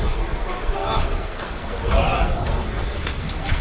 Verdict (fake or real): fake